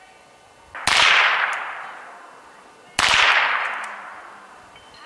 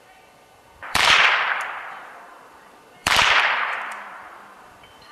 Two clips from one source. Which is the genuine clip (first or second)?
first